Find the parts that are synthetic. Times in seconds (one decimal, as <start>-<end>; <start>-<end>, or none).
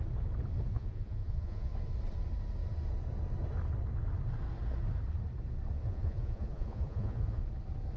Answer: 0.7-1.7; 5.8-7.4